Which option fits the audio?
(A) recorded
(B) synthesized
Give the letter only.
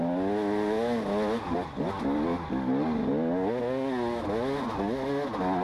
A